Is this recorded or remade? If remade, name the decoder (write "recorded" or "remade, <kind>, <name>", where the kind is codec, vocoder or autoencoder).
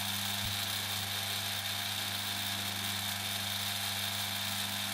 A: recorded